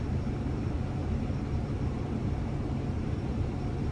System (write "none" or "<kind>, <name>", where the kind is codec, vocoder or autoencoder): vocoder, BigVGAN v2